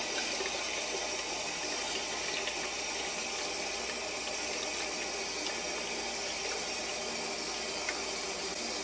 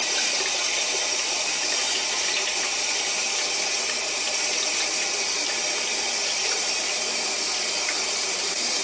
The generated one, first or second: second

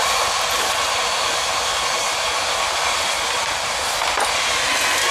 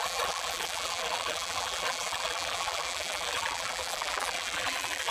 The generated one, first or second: second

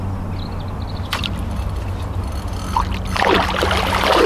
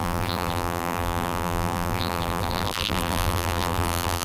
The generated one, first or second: second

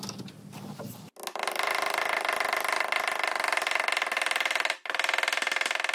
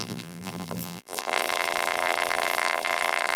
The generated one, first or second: second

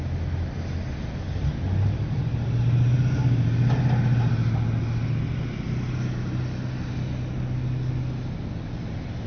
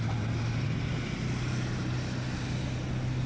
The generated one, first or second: second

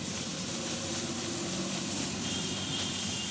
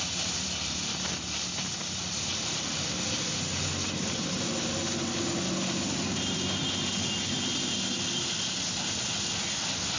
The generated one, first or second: first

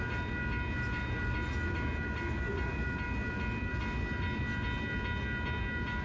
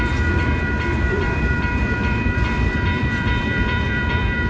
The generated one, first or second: second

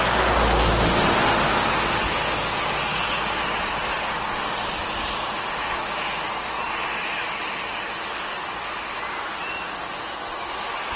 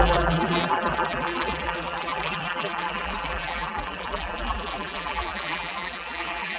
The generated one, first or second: second